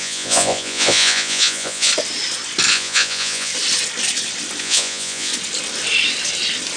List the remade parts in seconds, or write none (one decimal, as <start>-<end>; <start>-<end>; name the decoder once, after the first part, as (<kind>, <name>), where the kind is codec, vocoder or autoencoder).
0.0-1.9 (vocoder, Vocos); 2.7-3.5; 4.6-5.3